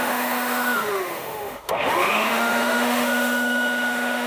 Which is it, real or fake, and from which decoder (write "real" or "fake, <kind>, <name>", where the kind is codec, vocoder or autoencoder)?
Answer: fake, autoencoder, DAC-VAE